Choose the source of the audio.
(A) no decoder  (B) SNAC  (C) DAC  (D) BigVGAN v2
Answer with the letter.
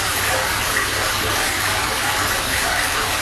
C